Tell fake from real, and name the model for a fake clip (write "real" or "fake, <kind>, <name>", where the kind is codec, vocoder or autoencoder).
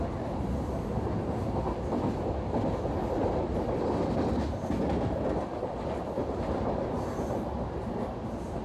real